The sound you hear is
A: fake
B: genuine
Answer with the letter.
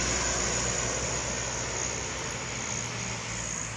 B